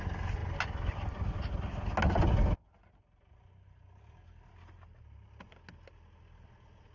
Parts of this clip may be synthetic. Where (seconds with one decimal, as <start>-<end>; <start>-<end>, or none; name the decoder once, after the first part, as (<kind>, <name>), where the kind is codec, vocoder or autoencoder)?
none